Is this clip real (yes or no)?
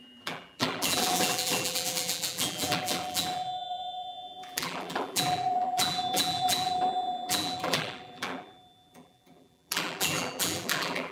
no